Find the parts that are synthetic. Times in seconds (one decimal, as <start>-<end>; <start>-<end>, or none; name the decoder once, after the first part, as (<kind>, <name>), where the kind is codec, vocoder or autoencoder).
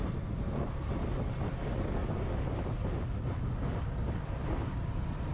1.3-2.0 (vocoder, BigVGAN v2); 3.2-5.3